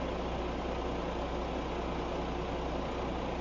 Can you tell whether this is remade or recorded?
recorded